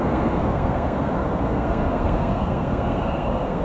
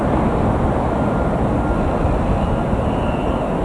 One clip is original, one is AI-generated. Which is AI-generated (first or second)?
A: first